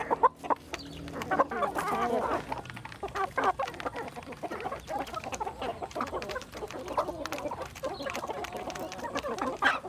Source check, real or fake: real